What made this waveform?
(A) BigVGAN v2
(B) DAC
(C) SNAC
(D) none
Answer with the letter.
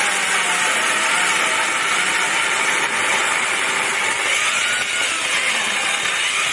D